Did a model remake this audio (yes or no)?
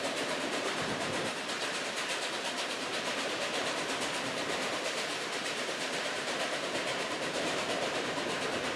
yes